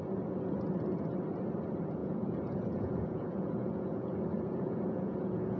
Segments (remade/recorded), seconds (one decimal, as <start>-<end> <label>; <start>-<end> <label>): 0.0-2.0 recorded; 2.0-5.6 remade